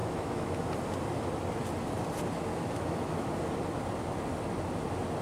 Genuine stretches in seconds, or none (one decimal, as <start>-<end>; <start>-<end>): 0.6-2.5; 3.3-5.2